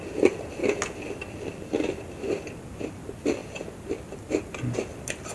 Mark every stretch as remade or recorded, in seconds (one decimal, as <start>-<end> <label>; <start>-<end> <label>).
0.0-3.4 recorded; 3.4-5.3 remade